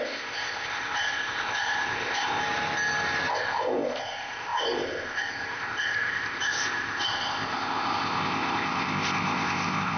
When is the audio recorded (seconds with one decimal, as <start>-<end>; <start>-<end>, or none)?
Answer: 2.4-3.3